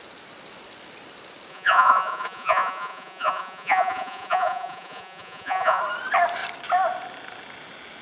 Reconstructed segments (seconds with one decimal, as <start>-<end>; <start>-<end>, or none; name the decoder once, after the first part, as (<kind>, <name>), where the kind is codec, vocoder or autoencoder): 1.5-5.8 (vocoder, Vocos)